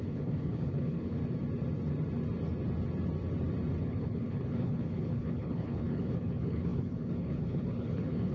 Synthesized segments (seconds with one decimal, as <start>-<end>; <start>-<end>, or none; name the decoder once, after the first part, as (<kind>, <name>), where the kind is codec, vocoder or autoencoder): 0.0-1.2 (codec, HILCodec); 3.8-8.3